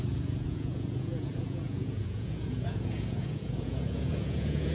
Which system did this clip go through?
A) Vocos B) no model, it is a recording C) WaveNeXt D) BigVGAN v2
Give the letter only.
A